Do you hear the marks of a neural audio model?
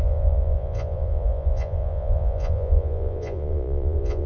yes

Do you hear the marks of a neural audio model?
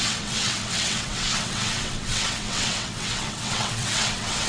yes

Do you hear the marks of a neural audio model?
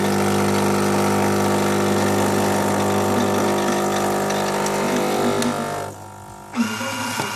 no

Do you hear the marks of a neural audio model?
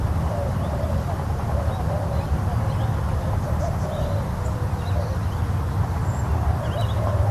no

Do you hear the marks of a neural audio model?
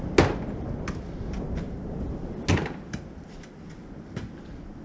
no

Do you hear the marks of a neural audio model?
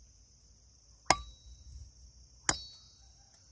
no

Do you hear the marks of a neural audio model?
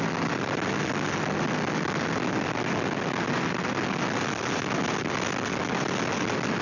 no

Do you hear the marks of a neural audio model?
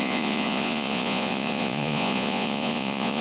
yes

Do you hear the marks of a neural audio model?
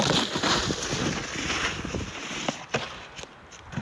no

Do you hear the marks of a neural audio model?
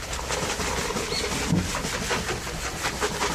no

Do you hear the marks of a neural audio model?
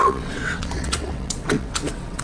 yes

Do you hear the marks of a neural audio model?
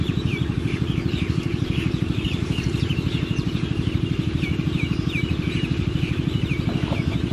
yes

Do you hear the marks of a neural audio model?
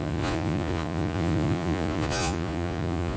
yes